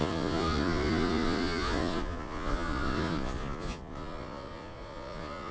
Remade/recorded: remade